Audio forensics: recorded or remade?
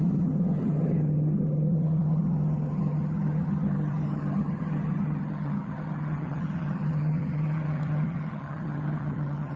remade